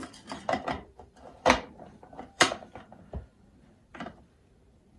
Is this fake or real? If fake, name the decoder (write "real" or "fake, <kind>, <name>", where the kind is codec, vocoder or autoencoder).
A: fake, vocoder, BigVGAN v2